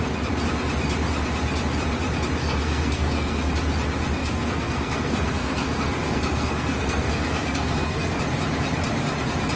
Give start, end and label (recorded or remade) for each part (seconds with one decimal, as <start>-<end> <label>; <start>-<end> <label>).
0.0-2.4 recorded; 2.4-3.5 remade; 3.5-4.2 recorded; 4.2-8.2 remade; 8.2-9.6 recorded